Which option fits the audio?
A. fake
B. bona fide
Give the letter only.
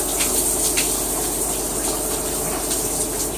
B